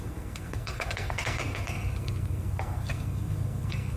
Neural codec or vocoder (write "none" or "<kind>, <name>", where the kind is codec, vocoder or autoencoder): codec, SNAC